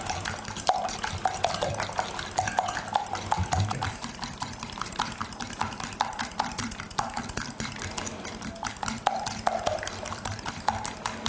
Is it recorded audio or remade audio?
recorded